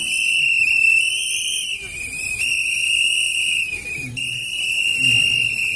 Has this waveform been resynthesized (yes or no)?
no